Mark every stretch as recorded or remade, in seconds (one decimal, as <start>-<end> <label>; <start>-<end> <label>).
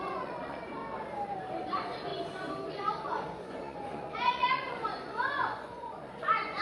0.0-0.8 remade; 0.8-1.6 recorded; 1.6-2.1 remade; 2.1-2.7 recorded; 2.7-6.6 remade